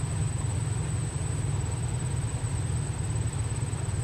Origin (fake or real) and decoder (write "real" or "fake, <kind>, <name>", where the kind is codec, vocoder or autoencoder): real